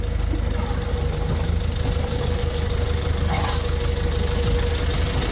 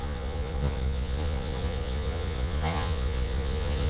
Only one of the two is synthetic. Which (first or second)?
second